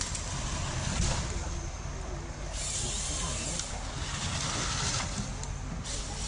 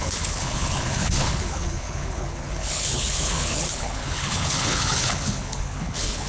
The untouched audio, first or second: first